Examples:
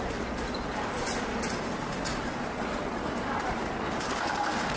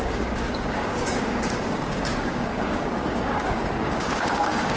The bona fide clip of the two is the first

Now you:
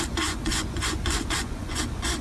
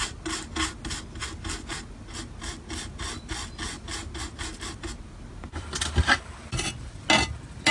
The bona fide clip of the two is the second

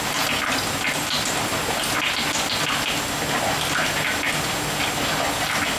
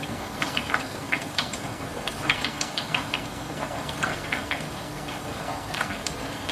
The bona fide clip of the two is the first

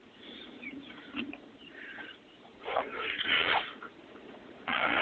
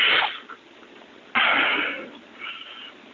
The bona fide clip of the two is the second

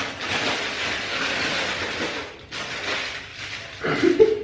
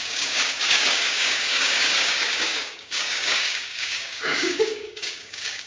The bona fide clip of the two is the first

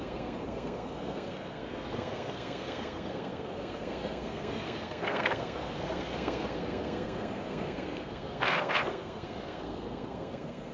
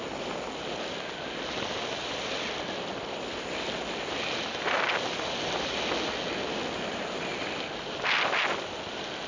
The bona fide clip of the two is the second